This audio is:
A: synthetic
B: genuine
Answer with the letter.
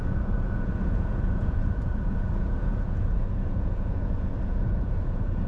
A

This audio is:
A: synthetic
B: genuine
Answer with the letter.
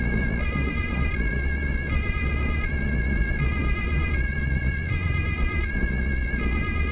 A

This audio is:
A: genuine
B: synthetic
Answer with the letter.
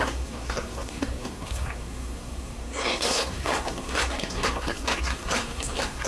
B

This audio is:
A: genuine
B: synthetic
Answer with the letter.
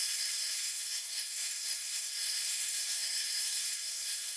B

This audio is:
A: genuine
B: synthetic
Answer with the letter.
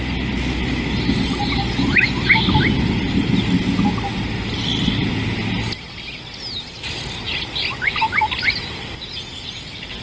A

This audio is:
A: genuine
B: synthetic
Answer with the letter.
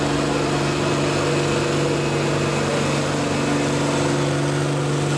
A